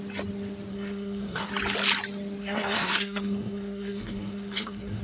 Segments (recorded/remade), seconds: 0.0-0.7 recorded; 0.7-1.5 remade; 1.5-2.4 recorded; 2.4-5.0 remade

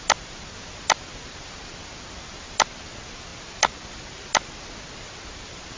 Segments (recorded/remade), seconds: 0.0-5.8 recorded

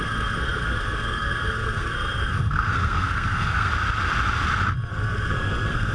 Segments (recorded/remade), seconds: 0.0-3.7 remade; 3.7-4.9 recorded; 4.9-5.9 remade